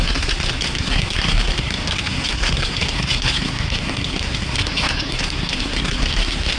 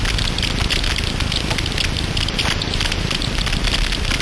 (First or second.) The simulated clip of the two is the first